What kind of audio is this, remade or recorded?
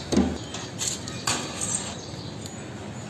recorded